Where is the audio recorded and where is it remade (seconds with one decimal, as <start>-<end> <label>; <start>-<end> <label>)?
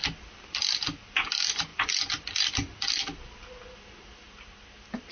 0.0-5.1 recorded